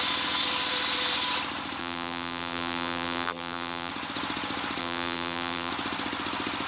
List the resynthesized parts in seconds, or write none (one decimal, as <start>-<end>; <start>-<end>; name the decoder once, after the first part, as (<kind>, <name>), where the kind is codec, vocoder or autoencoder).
1.8-3.9 (vocoder, BigVGAN v2); 4.8-5.7